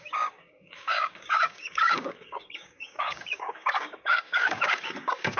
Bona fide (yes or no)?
no